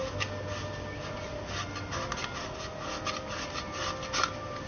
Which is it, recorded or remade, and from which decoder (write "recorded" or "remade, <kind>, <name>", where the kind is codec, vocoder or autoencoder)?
recorded